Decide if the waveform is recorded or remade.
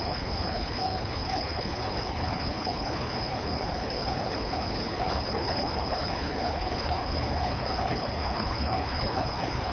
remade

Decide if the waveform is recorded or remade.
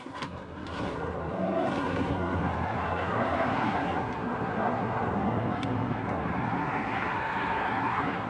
remade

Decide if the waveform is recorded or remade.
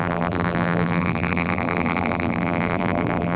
remade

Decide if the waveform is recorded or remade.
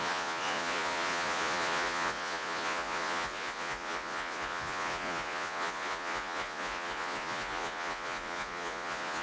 remade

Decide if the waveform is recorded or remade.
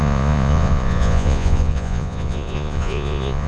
remade